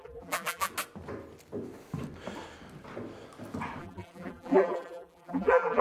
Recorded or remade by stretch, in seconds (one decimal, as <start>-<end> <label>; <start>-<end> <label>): 0.0-0.7 remade; 0.7-3.8 recorded; 3.8-5.8 remade